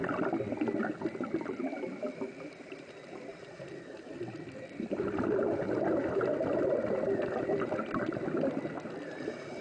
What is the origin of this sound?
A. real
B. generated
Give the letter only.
A